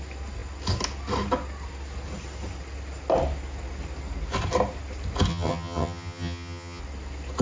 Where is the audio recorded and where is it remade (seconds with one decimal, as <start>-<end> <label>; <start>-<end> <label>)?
0.0-5.3 recorded; 5.3-6.8 remade; 6.8-7.4 recorded